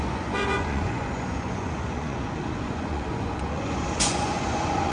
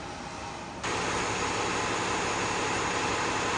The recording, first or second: second